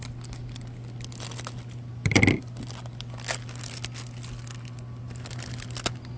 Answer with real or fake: real